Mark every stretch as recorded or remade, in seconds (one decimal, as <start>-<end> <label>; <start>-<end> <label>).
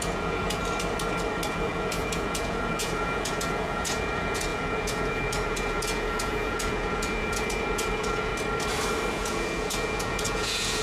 0.0-0.6 remade; 0.6-1.5 recorded; 1.5-8.3 remade; 8.3-9.1 recorded; 9.1-10.8 remade